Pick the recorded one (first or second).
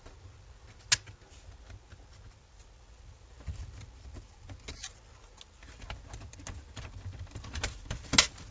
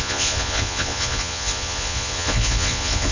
first